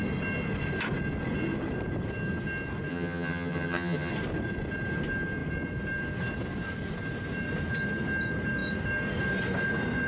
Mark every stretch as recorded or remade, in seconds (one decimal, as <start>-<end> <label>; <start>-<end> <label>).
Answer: 0.0-2.9 recorded; 2.9-4.1 remade; 4.1-10.1 recorded